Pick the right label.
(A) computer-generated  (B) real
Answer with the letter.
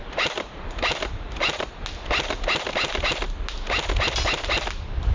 B